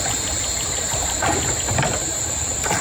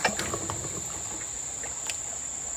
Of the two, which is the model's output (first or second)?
first